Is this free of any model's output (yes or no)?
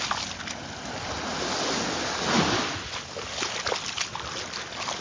yes